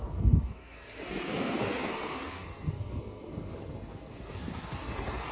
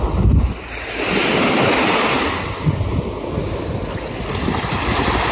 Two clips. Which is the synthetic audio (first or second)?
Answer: first